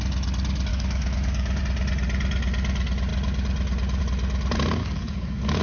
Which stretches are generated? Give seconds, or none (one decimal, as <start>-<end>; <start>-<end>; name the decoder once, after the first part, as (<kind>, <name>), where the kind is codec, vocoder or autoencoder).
0.7-1.6 (codec, DAC); 4.8-5.6